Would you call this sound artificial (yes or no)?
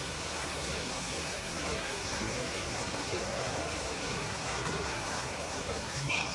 yes